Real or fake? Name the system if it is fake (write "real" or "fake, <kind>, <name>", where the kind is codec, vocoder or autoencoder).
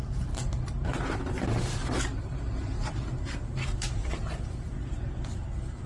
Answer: real